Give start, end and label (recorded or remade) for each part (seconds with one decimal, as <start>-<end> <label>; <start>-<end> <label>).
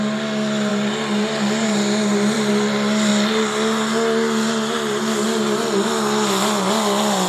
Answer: 0.0-0.7 recorded; 0.7-2.5 remade; 2.5-7.3 recorded